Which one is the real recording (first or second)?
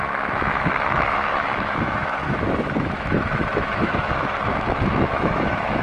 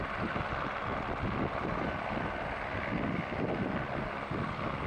second